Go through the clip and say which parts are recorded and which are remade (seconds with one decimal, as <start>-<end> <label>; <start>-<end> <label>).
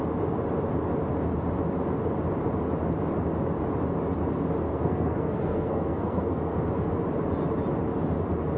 0.0-4.7 recorded; 4.7-6.7 remade; 6.7-8.6 recorded